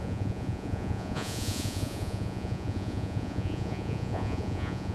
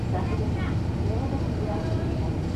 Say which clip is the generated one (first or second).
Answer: first